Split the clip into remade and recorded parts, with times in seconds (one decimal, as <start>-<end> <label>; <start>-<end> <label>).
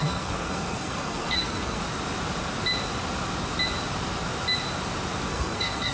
0.0-1.8 remade; 1.8-5.3 recorded; 5.3-5.9 remade